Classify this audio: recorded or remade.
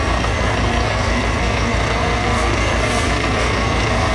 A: remade